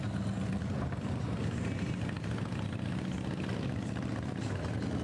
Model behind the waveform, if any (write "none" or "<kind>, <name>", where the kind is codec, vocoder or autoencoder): none